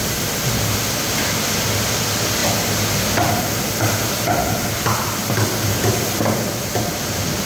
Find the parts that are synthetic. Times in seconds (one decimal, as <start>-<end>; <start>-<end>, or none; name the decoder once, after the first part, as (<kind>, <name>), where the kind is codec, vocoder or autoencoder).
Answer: none